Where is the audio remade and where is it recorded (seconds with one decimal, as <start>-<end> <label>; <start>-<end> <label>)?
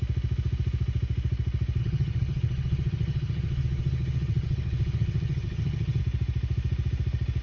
0.0-1.8 recorded; 1.8-6.0 remade; 6.0-7.4 recorded